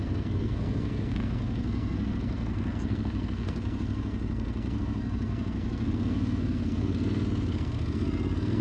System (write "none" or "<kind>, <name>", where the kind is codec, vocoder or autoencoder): codec, SNAC